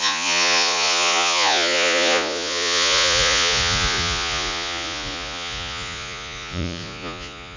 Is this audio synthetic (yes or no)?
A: yes